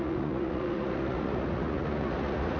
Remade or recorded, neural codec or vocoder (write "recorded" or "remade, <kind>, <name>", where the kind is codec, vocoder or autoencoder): remade, vocoder, Vocos